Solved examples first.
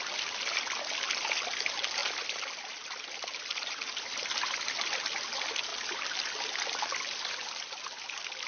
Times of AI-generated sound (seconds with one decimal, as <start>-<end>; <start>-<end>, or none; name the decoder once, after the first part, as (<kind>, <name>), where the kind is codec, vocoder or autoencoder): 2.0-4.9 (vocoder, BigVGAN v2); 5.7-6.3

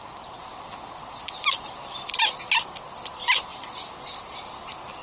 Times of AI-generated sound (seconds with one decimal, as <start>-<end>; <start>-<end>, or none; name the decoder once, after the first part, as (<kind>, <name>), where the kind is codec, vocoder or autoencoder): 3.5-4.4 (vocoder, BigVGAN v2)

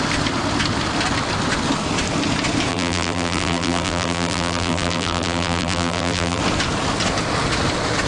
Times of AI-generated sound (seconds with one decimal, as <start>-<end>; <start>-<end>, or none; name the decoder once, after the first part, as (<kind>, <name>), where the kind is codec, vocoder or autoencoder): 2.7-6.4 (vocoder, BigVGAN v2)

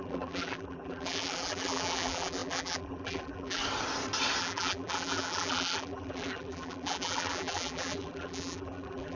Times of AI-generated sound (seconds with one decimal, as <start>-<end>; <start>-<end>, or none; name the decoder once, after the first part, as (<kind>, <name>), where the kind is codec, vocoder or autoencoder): 0.0-3.6 (vocoder, BigVGAN v2); 4.4-9.2

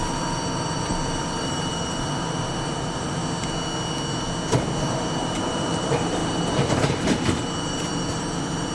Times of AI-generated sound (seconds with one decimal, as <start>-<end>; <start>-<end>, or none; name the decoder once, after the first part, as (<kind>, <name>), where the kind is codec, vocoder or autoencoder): 0.0-3.2 (vocoder, BigVGAN v2); 4.8-8.7

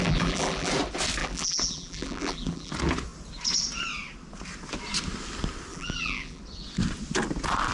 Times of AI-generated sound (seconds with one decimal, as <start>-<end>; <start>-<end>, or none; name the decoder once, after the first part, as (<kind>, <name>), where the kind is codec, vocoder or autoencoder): 0.0-0.7 (vocoder, BigVGAN v2); 1.2-2.7; 5.7-6.4

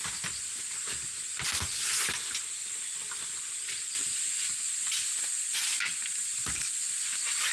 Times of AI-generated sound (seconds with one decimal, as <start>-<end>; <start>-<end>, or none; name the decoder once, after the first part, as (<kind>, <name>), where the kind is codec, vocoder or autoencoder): 2.6-7.1 (vocoder, BigVGAN v2)